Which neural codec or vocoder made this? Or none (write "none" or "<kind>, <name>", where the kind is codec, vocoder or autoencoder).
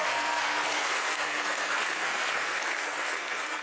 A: codec, SNAC